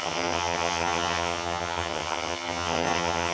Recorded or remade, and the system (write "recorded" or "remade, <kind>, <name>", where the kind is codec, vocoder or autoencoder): remade, vocoder, HiFi-GAN